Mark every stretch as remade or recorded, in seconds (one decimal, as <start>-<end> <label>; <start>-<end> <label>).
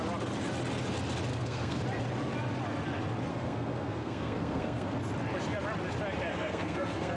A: 0.0-1.3 recorded; 1.3-1.8 remade; 1.8-3.3 recorded; 3.3-4.9 remade; 4.9-6.3 recorded; 6.3-7.2 remade